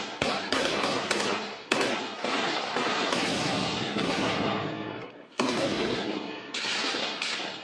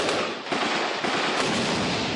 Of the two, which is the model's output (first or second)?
first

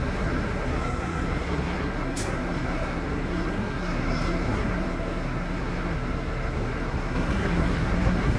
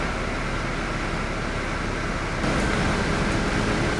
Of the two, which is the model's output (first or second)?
first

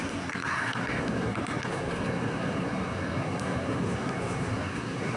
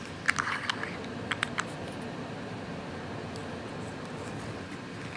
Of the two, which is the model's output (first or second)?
first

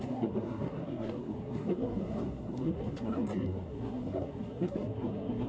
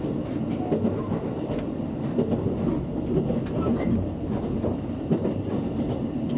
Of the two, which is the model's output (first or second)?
first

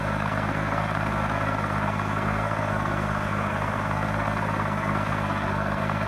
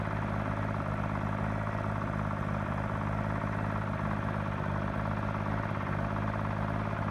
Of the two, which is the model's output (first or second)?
first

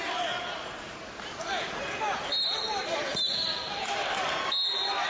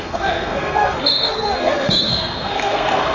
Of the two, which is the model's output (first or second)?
second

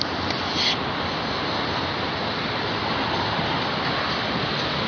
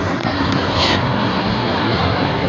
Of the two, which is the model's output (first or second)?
second